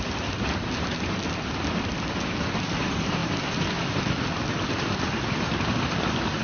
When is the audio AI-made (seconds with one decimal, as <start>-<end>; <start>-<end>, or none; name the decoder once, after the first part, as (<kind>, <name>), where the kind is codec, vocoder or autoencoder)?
none